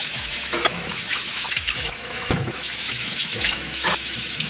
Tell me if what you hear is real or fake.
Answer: fake